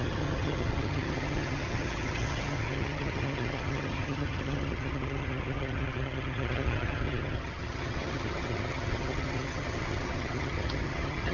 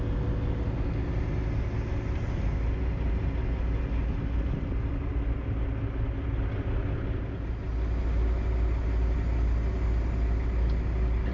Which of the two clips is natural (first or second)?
second